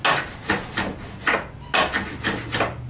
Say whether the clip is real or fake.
real